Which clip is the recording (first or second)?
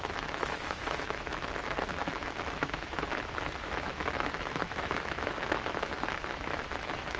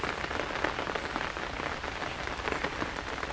second